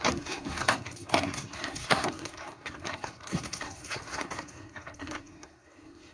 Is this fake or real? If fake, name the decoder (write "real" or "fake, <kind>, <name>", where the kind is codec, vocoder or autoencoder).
fake, codec, SNAC